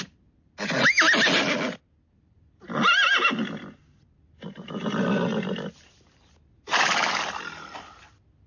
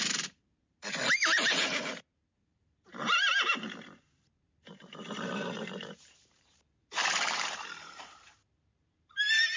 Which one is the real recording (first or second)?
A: first